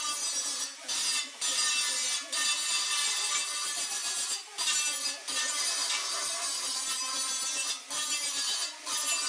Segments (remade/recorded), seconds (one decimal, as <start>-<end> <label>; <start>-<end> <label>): 0.0-9.3 recorded